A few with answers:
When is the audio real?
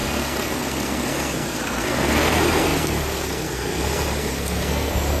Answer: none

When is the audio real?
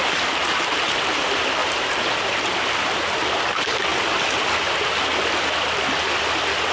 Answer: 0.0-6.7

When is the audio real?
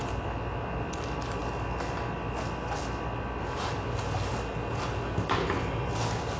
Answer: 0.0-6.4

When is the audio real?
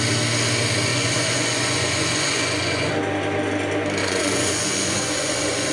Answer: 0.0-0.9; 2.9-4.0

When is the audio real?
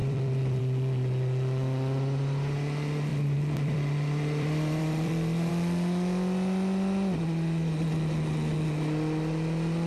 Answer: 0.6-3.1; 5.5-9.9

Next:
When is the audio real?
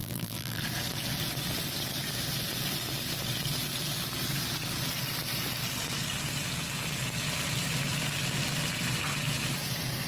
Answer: 0.6-10.1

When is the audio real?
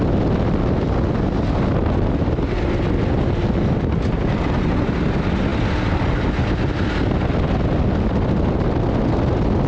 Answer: 0.0-9.7